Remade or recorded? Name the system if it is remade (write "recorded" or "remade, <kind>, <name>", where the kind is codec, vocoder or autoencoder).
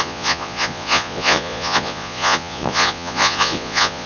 remade, vocoder, Vocos